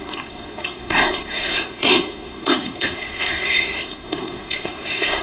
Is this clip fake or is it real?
fake